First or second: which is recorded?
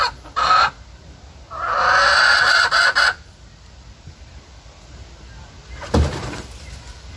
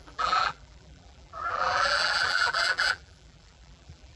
first